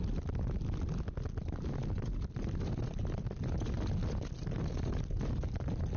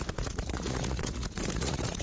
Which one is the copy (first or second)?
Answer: second